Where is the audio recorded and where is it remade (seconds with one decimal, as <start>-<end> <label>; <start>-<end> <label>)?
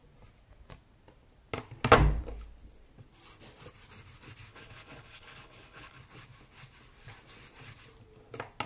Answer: 0.0-4.5 recorded; 4.5-6.0 remade; 6.0-8.7 recorded